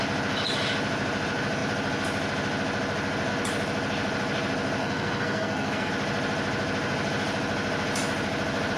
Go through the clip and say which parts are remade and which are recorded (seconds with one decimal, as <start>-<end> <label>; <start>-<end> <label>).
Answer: 0.0-4.8 recorded; 4.8-5.9 remade; 5.9-8.8 recorded